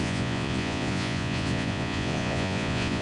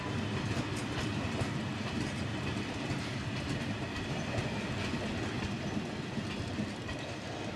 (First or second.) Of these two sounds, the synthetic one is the first